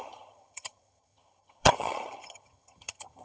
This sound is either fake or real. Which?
fake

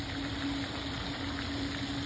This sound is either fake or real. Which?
real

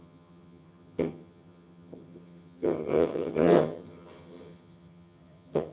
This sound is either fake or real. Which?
fake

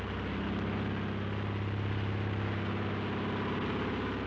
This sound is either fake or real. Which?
real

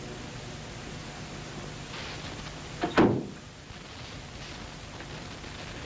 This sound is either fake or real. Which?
real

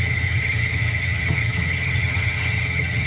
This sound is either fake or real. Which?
fake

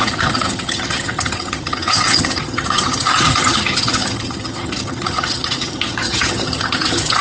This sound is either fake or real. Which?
fake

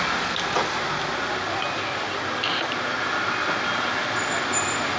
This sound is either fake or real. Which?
real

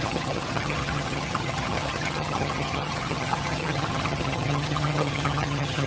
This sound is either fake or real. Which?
fake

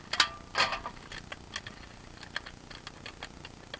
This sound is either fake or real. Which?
real